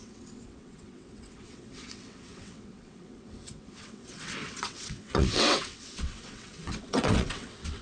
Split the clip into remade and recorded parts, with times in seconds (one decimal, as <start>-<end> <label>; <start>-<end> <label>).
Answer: 0.0-7.8 remade